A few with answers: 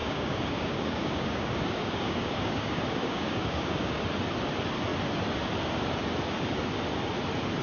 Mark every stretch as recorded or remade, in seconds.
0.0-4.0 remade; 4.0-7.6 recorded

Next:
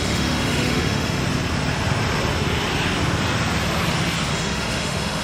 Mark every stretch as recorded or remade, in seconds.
0.0-1.2 remade; 1.2-4.3 recorded; 4.3-5.2 remade

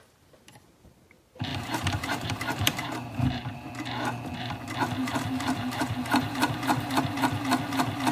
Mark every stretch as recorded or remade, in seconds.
0.0-1.5 recorded; 1.5-3.7 remade; 3.7-5.0 recorded; 5.0-7.0 remade; 7.0-8.1 recorded

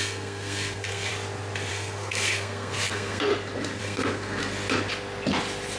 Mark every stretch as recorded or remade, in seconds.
0.0-1.1 remade; 1.1-1.7 recorded; 1.7-3.3 remade; 3.3-3.8 recorded; 3.8-4.4 remade; 4.4-5.8 recorded

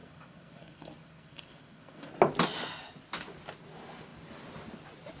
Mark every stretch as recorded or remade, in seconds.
0.0-2.1 remade; 2.1-5.2 recorded

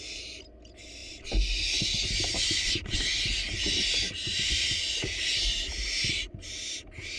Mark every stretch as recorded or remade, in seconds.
0.0-7.2 recorded

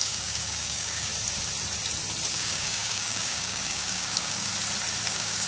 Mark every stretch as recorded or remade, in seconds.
0.0-1.1 remade; 1.1-2.3 recorded; 2.3-4.5 remade; 4.5-5.1 recorded; 5.1-5.5 remade